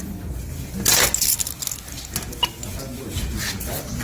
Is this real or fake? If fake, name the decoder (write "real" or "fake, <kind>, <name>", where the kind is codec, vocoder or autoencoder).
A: real